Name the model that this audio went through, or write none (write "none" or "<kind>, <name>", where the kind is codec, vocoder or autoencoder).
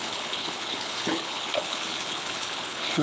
codec, HILCodec